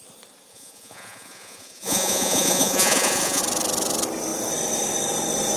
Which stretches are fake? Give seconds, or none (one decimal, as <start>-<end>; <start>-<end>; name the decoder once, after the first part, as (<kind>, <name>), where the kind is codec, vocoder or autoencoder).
0.5-3.4 (vocoder, Vocos)